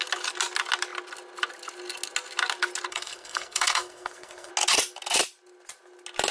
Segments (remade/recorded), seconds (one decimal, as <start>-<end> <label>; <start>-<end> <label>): 0.0-2.9 recorded; 2.9-4.5 remade; 4.5-6.3 recorded